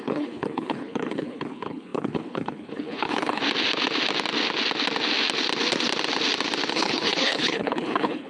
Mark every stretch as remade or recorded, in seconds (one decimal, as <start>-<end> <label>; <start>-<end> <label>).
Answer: 0.0-3.4 remade; 3.4-6.7 recorded; 6.7-8.3 remade